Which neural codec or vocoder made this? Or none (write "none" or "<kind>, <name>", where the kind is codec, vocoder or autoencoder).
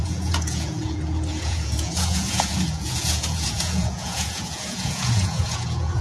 vocoder, Vocos